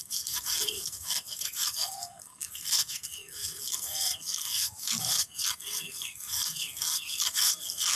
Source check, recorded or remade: remade